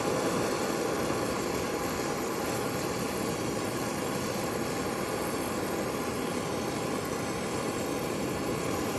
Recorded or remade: recorded